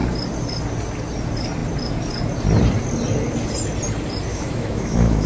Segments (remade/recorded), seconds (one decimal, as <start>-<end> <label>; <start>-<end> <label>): 0.0-4.3 recorded; 4.3-5.3 remade